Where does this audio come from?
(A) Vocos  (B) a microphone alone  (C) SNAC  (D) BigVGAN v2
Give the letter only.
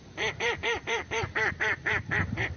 D